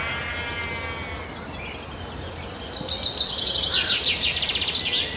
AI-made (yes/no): no